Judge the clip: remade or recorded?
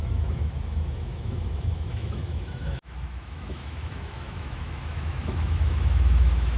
remade